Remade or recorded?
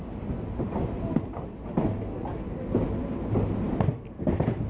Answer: recorded